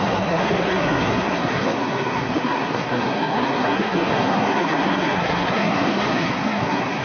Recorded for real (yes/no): no